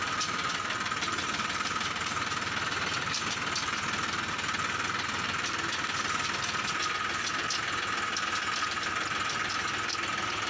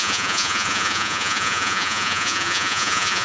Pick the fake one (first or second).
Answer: second